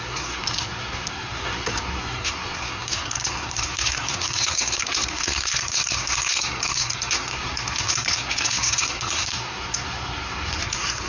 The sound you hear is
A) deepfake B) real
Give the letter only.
A